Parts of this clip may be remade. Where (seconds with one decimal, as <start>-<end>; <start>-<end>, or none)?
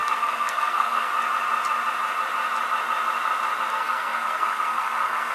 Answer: 0.0-1.1; 3.7-5.3